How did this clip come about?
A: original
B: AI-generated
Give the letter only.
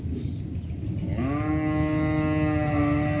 A